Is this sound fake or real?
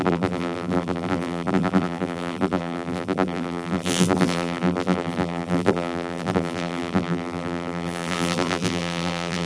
fake